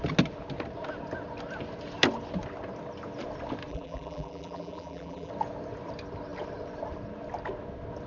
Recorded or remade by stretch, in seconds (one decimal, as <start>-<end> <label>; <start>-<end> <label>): 0.0-3.7 recorded; 3.7-5.3 remade; 5.3-8.1 recorded